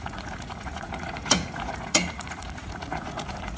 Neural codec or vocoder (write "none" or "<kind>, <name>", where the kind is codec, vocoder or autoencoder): vocoder, Vocos